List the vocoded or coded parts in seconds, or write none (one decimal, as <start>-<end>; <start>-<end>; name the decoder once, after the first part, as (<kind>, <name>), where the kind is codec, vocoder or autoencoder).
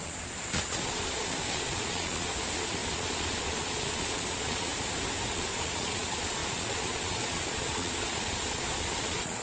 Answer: 0.0-4.7 (vocoder, Vocos); 5.3-9.4